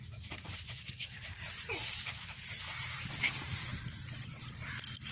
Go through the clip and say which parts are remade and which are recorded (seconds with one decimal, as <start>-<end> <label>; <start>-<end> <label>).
0.0-0.5 recorded; 0.5-1.9 remade; 1.9-3.7 recorded; 3.7-4.6 remade; 4.6-5.1 recorded